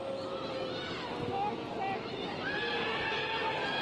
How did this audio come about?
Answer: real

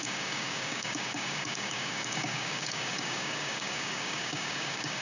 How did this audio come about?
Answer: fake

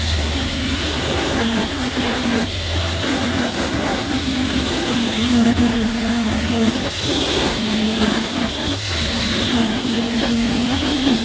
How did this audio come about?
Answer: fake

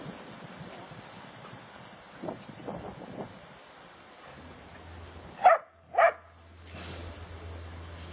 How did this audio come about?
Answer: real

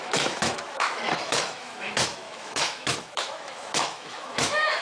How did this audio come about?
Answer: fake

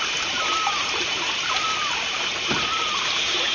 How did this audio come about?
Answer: fake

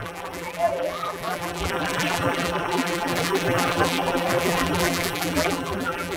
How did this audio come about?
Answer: fake